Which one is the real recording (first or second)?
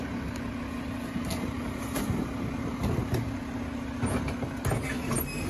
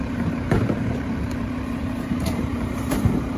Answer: first